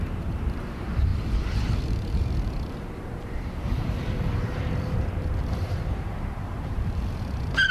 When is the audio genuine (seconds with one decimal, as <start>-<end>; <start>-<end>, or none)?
none